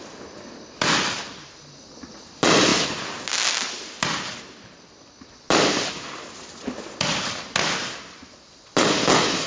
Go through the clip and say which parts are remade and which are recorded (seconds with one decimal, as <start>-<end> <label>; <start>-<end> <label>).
0.0-9.5 recorded